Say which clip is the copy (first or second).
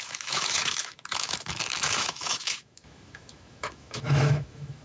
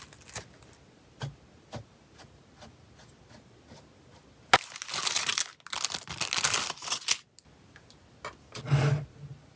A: first